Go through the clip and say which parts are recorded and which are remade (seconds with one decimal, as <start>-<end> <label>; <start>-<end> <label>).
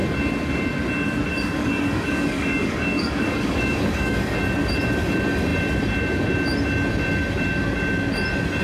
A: 0.0-1.3 recorded; 1.3-4.4 remade; 4.4-8.6 recorded